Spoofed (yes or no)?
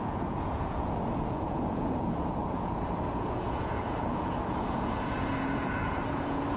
yes